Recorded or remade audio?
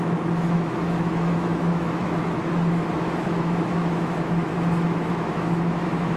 remade